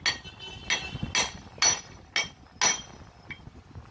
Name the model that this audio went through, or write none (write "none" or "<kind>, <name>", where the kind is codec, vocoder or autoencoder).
none